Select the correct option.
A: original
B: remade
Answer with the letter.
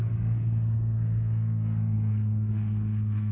B